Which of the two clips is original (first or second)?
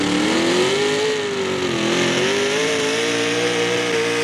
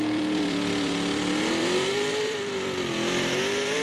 first